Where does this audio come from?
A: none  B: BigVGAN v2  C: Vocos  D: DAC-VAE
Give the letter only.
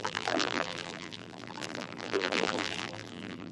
B